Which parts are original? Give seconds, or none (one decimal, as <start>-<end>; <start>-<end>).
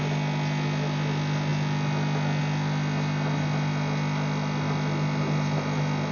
0.0-6.1